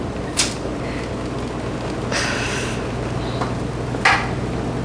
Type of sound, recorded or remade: recorded